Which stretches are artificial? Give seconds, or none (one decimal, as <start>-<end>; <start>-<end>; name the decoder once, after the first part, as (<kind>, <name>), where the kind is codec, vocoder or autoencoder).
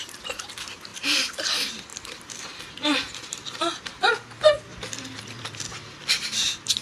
0.9-1.5 (vocoder, BigVGAN v2); 1.9-4.1